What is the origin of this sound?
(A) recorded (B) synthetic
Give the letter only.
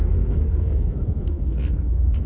B